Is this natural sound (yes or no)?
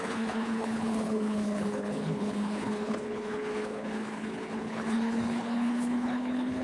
no